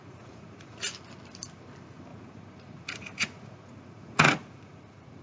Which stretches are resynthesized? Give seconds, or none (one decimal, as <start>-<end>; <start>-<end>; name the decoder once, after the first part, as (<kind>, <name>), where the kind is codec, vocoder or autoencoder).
0.0-0.9 (vocoder, Vocos); 2.1-5.2